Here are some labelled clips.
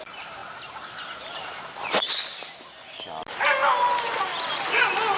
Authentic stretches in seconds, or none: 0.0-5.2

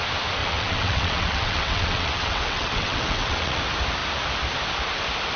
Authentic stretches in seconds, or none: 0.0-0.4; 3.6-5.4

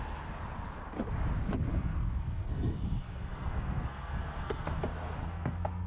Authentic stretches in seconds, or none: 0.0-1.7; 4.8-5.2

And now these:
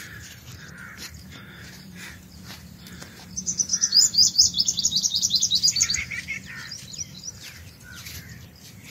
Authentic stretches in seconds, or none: none

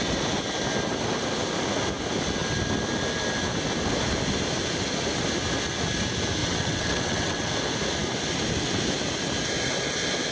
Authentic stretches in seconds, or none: 0.0-6.4; 7.5-10.3

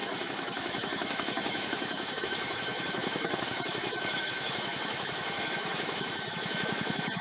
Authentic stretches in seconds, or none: none